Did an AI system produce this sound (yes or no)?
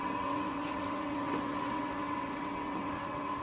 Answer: yes